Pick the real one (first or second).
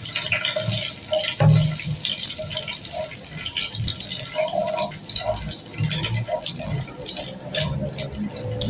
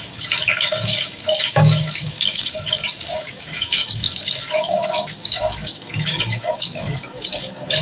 first